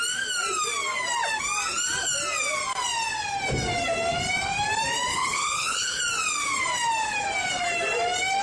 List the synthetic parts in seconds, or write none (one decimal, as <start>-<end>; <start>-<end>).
5.1-6.0